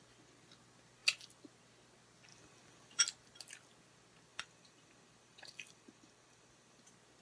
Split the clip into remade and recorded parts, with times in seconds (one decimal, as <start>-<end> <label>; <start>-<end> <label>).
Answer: 0.0-2.3 recorded; 2.3-3.0 remade; 3.0-4.3 recorded; 4.3-6.8 remade; 6.8-7.2 recorded